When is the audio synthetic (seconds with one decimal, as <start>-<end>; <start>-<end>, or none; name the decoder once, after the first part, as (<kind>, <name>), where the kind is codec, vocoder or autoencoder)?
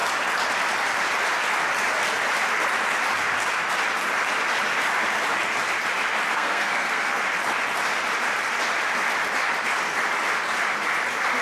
6.3-7.2 (codec, SNAC)